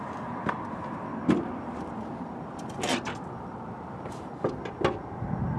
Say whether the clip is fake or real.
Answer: real